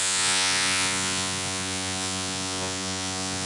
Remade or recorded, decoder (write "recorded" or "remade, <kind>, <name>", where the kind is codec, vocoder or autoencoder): remade, vocoder, Vocos